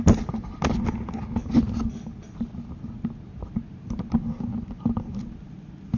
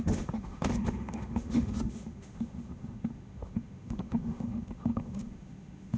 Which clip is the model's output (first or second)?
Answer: second